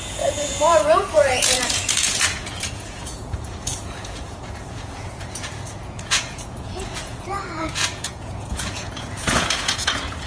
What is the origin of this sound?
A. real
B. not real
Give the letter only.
B